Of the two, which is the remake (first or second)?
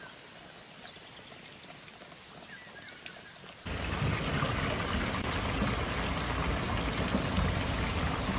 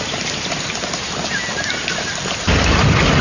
second